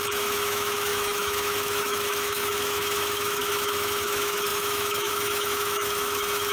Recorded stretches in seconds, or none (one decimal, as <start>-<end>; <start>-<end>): none